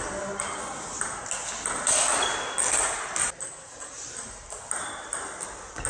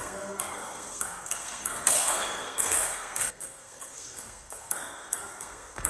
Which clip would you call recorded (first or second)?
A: first